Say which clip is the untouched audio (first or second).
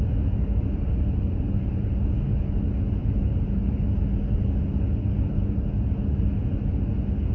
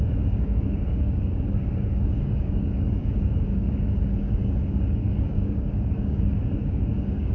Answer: first